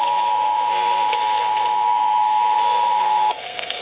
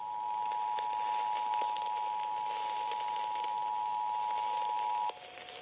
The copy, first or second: first